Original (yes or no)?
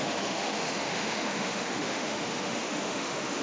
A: no